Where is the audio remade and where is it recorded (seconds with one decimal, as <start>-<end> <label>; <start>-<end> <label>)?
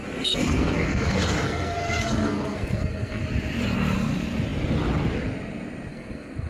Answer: 0.0-3.2 remade; 3.2-5.9 recorded; 5.9-6.5 remade